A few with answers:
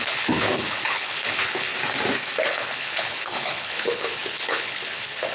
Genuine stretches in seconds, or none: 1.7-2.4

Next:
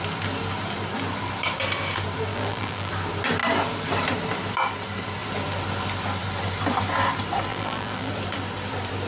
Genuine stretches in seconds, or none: 0.0-2.3; 2.9-7.5; 8.1-9.1

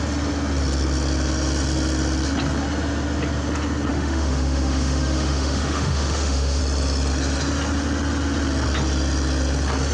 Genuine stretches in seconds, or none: 0.0-3.9; 6.6-9.9

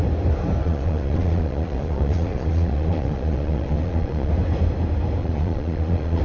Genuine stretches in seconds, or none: 0.0-0.6; 4.3-5.2